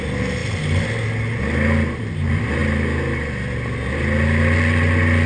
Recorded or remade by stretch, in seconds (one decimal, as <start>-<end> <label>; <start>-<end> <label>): 0.0-5.3 recorded